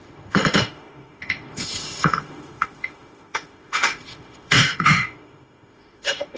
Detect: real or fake fake